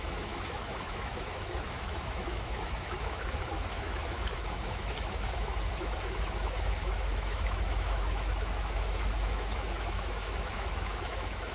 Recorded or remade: remade